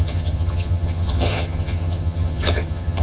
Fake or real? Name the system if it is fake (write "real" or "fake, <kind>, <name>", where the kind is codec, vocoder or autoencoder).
fake, vocoder, HiFi-GAN